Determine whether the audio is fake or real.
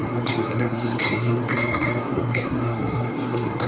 fake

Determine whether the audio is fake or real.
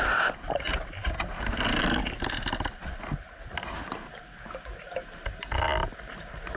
real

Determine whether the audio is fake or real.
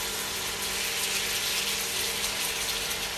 real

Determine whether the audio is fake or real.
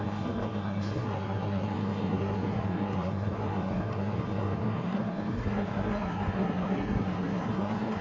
fake